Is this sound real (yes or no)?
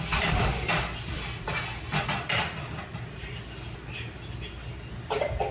yes